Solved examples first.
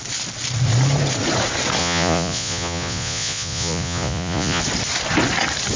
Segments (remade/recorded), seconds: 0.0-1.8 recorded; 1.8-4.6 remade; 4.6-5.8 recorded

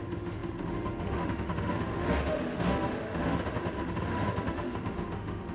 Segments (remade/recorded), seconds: 0.0-5.5 remade

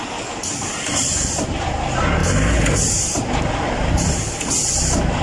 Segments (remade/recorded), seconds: 0.0-5.2 recorded

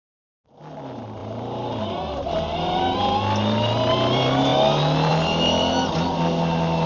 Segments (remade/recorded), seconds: 0.0-6.9 recorded

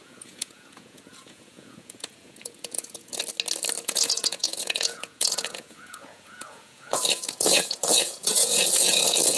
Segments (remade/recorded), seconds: 0.0-3.2 remade; 3.2-3.8 recorded; 3.8-9.4 remade